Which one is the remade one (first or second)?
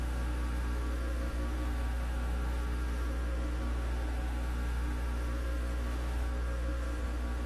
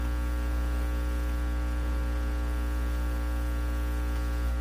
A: first